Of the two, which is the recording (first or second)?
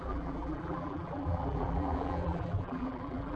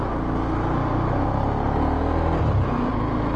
second